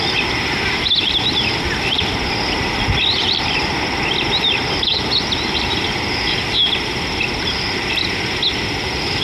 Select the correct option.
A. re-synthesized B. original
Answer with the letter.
B